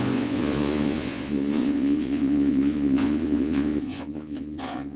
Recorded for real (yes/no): no